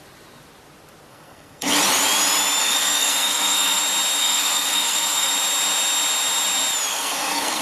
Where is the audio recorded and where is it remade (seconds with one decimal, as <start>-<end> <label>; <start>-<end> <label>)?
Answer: 0.0-1.1 recorded; 1.1-1.7 remade; 1.7-2.6 recorded; 2.6-3.8 remade; 3.8-4.2 recorded; 4.2-5.3 remade; 5.3-6.9 recorded; 6.9-7.6 remade